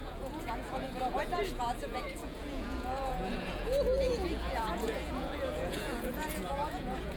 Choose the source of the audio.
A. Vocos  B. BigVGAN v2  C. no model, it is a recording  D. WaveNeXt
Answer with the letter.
A